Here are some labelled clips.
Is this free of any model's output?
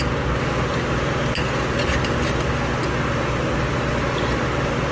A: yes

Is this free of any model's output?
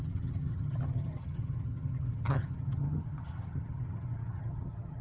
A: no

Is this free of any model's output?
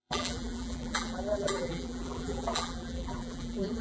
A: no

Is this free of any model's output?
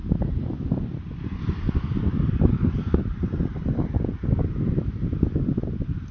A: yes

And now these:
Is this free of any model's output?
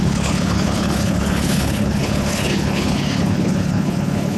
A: no